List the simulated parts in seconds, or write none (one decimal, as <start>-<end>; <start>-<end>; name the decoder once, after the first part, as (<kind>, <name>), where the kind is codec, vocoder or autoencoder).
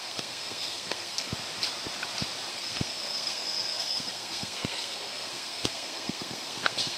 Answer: 0.0-1.3 (codec, SNAC); 2.5-7.0